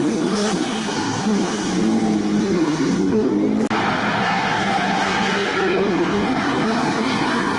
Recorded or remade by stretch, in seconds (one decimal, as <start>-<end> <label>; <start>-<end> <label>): 0.0-1.7 remade; 1.7-2.4 recorded; 2.4-3.3 remade; 3.3-4.2 recorded; 4.2-7.6 remade